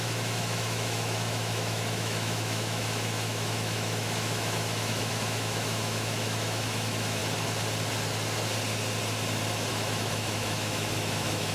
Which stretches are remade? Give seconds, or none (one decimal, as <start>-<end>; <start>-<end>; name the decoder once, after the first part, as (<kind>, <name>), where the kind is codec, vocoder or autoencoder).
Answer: 0.0-7.2 (autoencoder, DAC-VAE); 9.7-11.5